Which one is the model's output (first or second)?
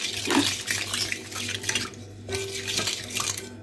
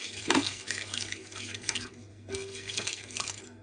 second